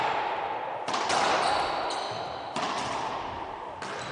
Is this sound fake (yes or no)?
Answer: no